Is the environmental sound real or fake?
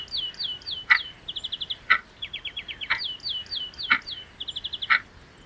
real